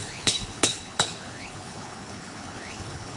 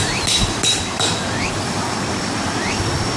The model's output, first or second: first